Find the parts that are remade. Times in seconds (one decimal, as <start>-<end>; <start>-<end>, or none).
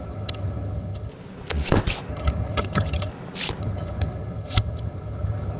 0.0-1.1; 2.1-3.1; 3.6-5.6